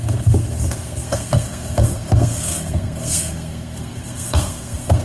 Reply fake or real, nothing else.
fake